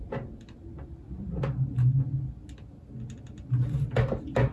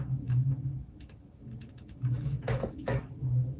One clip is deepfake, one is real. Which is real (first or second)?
first